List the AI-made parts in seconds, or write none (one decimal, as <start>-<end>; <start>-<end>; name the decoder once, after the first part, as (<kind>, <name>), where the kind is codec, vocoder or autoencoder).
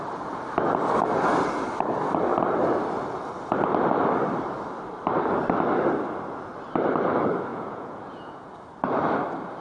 7.5-8.5 (vocoder, Vocos)